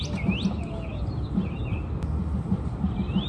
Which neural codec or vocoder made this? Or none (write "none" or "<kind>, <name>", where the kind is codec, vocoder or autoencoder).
none